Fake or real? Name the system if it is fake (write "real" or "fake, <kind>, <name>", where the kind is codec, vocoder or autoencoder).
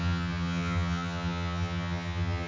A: fake, vocoder, HiFi-GAN